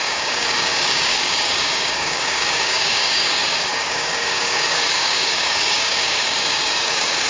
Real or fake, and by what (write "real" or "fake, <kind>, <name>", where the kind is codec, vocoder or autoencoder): fake, codec, DAC